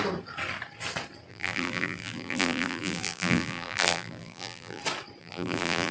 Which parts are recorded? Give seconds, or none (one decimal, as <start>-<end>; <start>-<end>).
0.0-1.3; 4.8-5.2